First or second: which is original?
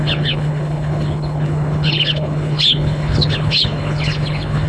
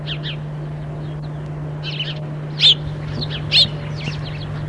second